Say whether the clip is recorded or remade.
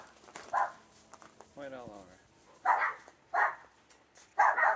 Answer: recorded